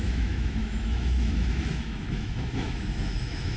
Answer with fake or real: fake